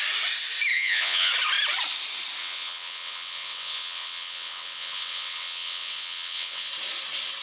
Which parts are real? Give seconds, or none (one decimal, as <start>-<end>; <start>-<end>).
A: 0.0-0.7; 1.3-2.4; 6.7-7.4